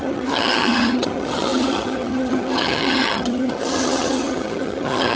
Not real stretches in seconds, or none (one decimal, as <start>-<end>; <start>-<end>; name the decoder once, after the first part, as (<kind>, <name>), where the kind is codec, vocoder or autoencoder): 0.0-5.2 (vocoder, HiFi-GAN)